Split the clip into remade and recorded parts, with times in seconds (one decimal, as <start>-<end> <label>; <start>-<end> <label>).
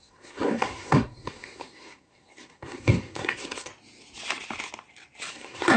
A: 0.0-3.7 remade; 3.7-5.3 recorded; 5.3-5.8 remade